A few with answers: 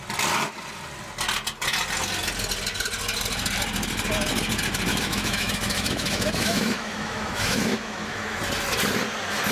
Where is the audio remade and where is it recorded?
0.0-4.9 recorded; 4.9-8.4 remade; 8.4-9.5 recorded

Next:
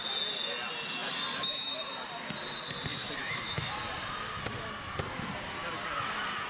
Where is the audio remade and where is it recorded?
0.0-2.9 recorded; 2.9-3.7 remade; 3.7-6.5 recorded

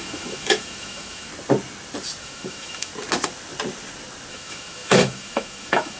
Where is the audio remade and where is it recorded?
0.0-1.3 remade; 1.3-2.2 recorded; 2.2-2.9 remade; 2.9-4.3 recorded; 4.3-6.0 remade

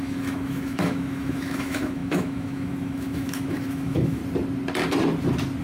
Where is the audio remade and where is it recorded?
0.0-4.2 remade; 4.2-5.6 recorded

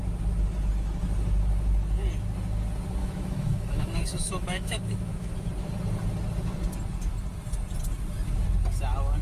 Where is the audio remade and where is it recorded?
0.0-3.0 recorded; 3.0-5.5 remade; 5.5-9.2 recorded

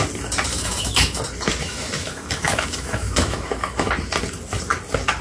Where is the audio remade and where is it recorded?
0.0-0.5 recorded; 0.5-1.2 remade; 1.2-1.6 recorded; 1.6-3.9 remade; 3.9-5.2 recorded